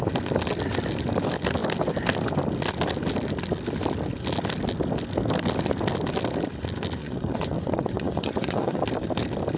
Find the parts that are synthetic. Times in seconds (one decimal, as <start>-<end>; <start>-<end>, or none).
7.0-8.8